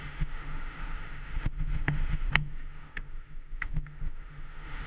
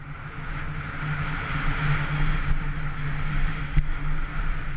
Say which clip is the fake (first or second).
first